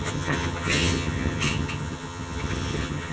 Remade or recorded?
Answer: remade